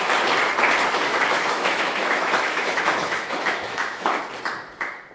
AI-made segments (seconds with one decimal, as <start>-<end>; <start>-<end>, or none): 1.1-4.2